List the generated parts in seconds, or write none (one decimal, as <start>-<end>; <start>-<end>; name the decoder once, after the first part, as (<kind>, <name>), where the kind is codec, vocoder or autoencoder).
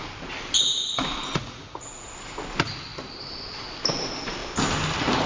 0.6-2.1 (vocoder, Vocos)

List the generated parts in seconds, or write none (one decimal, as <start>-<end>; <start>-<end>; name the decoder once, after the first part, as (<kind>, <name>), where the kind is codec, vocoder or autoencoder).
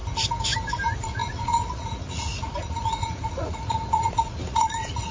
0.7-5.1 (vocoder, Vocos)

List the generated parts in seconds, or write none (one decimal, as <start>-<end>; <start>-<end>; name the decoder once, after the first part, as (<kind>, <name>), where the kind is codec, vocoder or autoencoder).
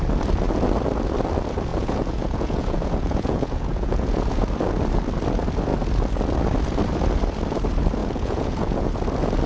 1.7-4.4 (vocoder, Vocos); 8.0-8.9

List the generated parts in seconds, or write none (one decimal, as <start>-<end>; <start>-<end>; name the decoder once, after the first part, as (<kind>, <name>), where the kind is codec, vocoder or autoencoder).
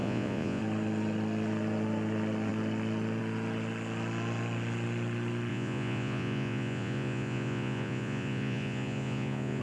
0.0-0.6 (vocoder, Vocos); 5.5-9.6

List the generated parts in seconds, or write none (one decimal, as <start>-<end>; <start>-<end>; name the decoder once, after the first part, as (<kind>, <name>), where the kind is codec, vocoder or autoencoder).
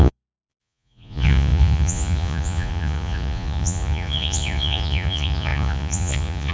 0.0-6.5 (vocoder, Vocos)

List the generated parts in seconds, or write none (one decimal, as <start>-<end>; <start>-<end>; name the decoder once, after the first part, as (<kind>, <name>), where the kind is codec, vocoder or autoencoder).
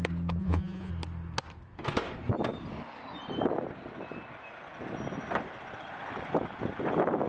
0.4-0.9 (vocoder, Vocos)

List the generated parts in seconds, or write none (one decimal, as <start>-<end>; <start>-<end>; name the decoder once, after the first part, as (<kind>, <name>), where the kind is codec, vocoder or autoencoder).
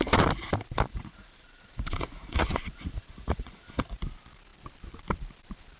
0.9-4.0 (vocoder, Vocos)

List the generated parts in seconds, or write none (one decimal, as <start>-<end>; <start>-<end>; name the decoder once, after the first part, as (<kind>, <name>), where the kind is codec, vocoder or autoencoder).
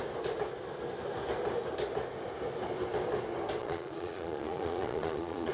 3.6-5.5 (vocoder, Vocos)